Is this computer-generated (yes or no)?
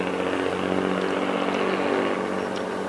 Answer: no